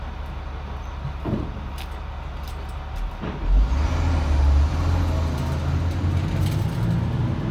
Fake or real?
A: real